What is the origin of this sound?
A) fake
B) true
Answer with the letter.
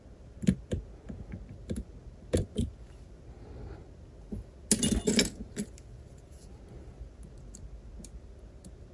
B